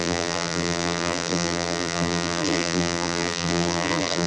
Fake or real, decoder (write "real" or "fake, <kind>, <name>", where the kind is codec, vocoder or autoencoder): fake, vocoder, BigVGAN v2